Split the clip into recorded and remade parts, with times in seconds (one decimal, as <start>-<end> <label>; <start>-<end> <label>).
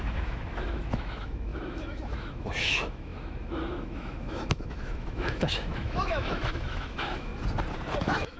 0.0-7.3 remade; 7.3-8.0 recorded; 8.0-8.4 remade